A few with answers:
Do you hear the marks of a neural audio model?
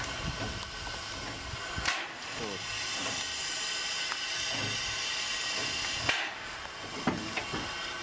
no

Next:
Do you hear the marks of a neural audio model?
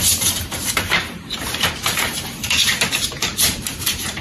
yes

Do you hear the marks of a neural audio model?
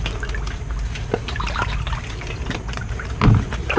no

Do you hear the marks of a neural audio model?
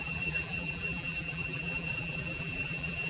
yes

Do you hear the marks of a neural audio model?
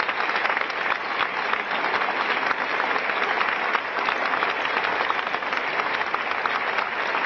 no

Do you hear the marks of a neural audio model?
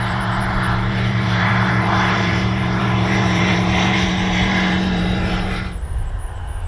yes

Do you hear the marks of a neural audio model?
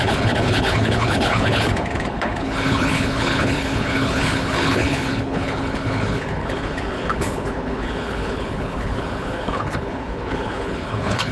yes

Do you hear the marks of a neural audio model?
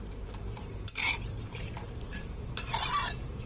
yes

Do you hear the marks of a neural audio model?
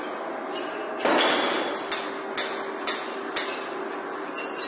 no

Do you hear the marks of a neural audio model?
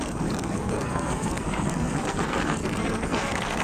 yes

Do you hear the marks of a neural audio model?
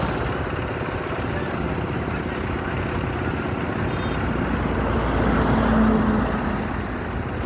no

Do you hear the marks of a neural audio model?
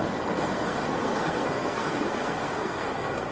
yes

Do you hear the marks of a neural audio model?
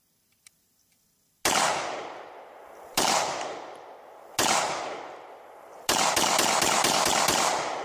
no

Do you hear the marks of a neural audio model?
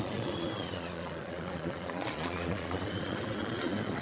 yes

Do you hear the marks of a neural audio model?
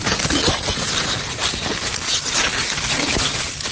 no